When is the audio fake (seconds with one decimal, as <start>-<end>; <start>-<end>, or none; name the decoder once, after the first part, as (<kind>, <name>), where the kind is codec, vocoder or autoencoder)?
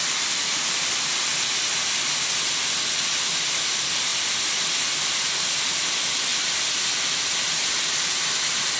none